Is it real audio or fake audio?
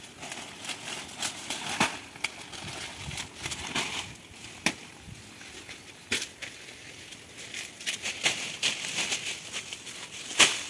real